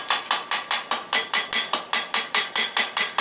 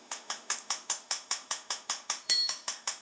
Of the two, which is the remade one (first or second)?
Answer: second